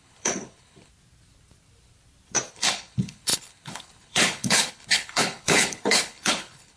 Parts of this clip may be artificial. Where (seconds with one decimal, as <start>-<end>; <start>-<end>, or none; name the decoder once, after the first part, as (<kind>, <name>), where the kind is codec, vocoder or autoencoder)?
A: 0.0-0.9 (codec, HILCodec); 2.5-6.8